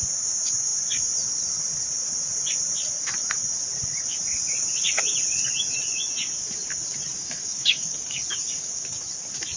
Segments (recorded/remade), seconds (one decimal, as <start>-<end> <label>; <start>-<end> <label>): 0.0-7.2 recorded; 7.2-8.9 remade; 8.9-9.6 recorded